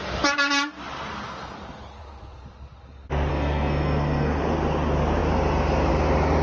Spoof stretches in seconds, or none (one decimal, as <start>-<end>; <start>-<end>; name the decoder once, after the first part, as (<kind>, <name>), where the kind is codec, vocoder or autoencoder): 3.3-4.4 (codec, SNAC)